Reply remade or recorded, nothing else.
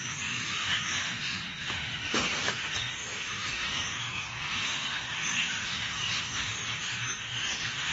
remade